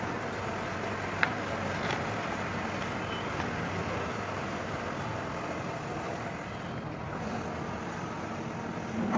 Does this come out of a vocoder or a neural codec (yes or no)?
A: no